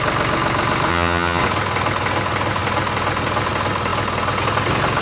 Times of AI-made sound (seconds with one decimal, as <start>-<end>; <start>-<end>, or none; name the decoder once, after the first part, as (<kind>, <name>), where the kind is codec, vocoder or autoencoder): 0.9-1.4 (vocoder, HiFi-GAN)